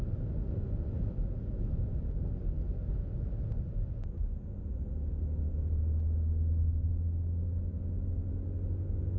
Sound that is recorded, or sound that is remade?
recorded